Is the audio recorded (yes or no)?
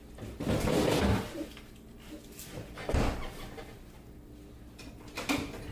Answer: yes